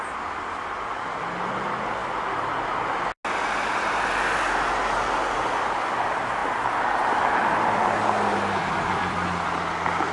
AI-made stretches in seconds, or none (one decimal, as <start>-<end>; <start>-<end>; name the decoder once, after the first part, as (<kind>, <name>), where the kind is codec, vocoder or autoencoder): none